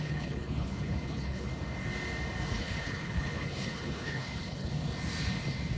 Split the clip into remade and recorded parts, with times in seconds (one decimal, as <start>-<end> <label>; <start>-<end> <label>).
0.0-1.5 remade; 1.5-2.5 recorded; 2.5-4.7 remade; 4.7-5.8 recorded